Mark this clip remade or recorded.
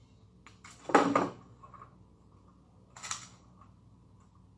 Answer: recorded